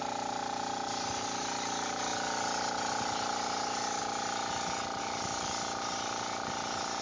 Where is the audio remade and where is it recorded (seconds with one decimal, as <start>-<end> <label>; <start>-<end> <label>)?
0.0-2.1 remade; 2.1-3.3 recorded; 3.3-4.0 remade; 4.0-5.0 recorded; 5.0-7.0 remade